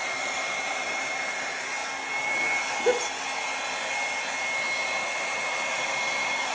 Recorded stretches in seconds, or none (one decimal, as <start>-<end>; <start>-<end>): 1.8-5.7